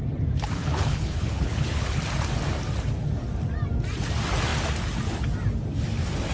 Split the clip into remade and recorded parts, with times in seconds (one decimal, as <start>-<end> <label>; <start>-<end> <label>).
0.0-0.6 recorded; 0.6-2.0 remade; 2.0-6.3 recorded